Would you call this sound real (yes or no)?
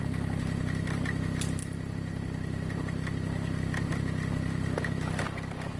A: yes